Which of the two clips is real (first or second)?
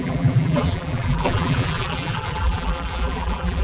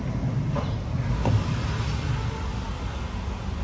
second